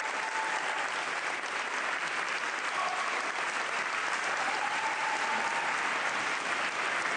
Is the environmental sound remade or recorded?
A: recorded